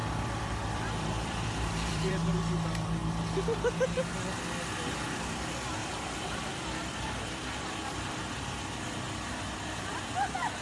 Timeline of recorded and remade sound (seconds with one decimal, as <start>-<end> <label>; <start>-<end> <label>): 0.0-2.3 remade; 2.3-5.8 recorded; 5.8-8.2 remade; 8.2-10.6 recorded